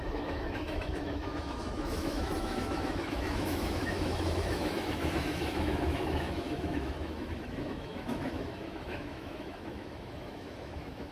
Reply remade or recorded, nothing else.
remade